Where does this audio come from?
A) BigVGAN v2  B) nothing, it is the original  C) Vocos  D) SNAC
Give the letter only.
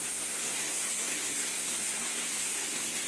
D